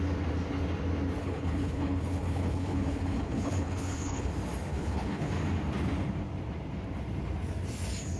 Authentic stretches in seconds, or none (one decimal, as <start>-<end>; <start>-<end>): 0.0-1.2; 4.3-4.7; 5.3-8.2